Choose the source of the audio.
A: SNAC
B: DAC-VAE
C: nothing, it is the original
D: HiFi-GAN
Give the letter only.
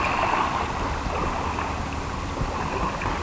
C